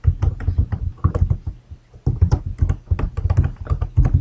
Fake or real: real